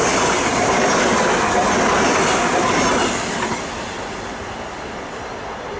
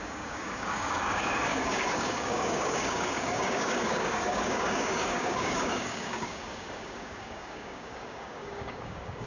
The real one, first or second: first